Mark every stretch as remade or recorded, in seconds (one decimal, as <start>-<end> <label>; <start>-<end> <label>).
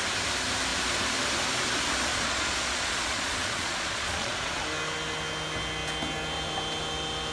0.0-2.1 recorded; 2.1-4.6 remade; 4.6-7.3 recorded